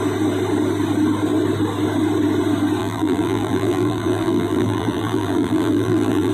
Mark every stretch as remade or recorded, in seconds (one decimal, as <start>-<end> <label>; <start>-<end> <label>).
0.0-2.8 recorded; 2.8-6.3 remade